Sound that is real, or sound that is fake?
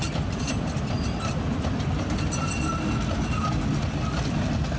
real